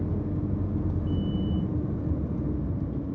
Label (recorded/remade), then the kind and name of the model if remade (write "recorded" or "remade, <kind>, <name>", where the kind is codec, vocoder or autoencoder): recorded